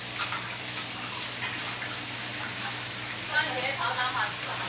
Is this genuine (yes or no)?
yes